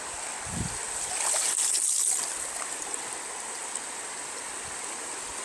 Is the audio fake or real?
real